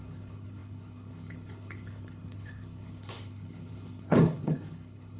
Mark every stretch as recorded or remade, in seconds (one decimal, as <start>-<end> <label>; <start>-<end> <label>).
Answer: 0.0-5.2 remade